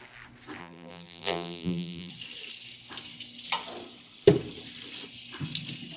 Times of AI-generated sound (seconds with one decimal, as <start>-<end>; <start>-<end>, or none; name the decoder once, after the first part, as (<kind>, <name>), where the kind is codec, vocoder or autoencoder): 0.6-2.1 (vocoder, BigVGAN v2)